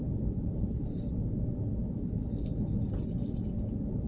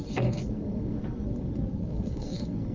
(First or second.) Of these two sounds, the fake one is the second